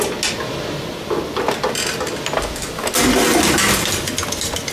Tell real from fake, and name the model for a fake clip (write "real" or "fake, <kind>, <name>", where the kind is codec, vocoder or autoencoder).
real